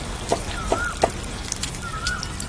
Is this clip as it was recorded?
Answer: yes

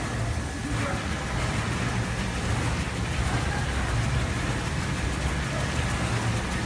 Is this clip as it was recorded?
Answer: yes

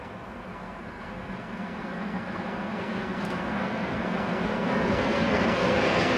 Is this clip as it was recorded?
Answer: no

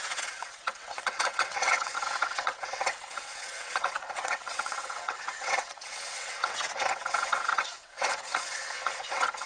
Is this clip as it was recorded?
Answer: no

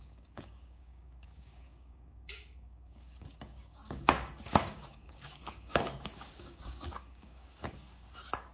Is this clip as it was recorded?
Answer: no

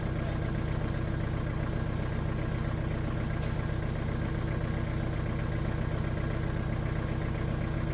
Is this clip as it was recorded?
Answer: yes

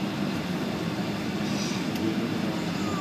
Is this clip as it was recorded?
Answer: yes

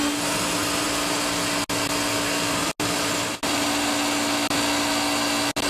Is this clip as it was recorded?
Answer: yes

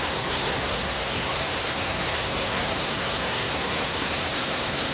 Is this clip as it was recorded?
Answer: no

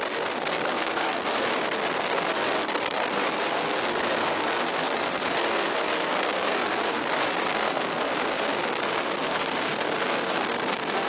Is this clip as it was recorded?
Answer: no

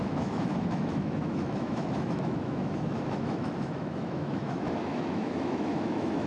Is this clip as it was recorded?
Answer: no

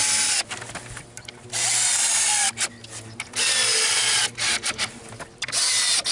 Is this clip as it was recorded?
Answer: yes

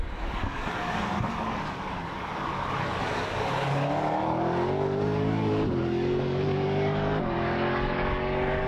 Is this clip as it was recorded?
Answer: no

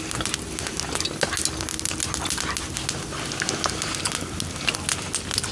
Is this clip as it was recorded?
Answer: yes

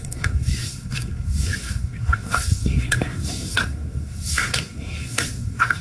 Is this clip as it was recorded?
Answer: no